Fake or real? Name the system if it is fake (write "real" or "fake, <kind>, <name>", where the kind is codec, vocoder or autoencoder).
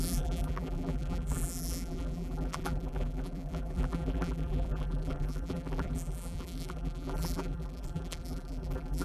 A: fake, vocoder, BigVGAN v2